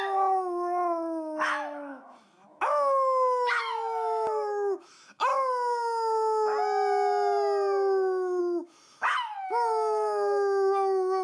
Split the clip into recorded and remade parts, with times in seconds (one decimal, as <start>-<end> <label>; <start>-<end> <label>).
0.0-5.3 remade; 5.3-8.4 recorded; 8.4-11.2 remade